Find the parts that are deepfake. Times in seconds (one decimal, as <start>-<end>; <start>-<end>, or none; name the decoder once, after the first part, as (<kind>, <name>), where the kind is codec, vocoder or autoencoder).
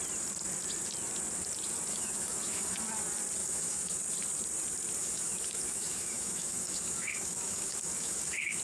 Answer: 1.9-2.8 (autoencoder, DAC-VAE); 3.4-4.0; 5.0-8.6